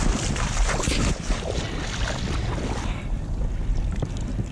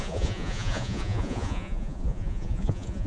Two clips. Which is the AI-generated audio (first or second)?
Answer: second